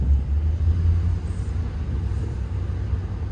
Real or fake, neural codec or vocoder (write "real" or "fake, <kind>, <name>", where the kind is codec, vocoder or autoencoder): real